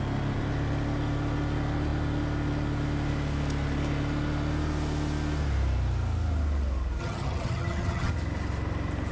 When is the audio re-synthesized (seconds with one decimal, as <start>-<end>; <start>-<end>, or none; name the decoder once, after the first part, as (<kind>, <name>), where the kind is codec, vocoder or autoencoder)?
7.0-8.1 (vocoder, HiFi-GAN)